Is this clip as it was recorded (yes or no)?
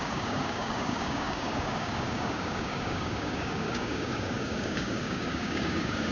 no